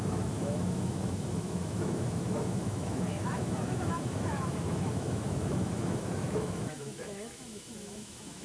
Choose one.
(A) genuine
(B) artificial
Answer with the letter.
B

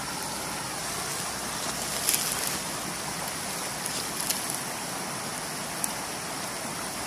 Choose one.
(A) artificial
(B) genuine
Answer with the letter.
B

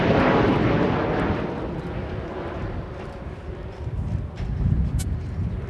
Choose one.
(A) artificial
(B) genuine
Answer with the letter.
B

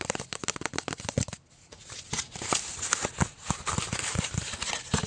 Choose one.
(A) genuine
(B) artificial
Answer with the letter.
A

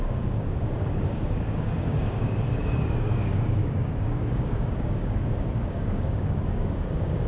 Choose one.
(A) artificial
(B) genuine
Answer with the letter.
A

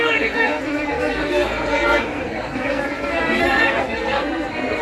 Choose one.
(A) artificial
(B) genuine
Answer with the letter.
A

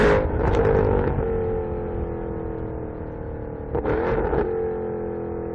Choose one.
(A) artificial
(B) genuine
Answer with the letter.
B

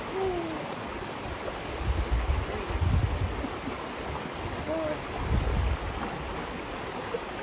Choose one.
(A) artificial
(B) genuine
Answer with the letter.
B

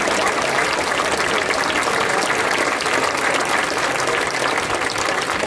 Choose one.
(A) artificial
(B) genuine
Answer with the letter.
B